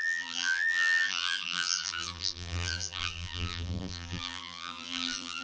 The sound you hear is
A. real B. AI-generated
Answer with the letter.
B